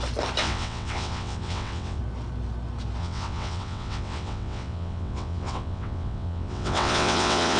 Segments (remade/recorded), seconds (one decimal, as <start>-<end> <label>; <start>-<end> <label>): 0.0-0.4 recorded; 0.4-2.0 remade; 2.0-3.0 recorded; 3.0-7.6 remade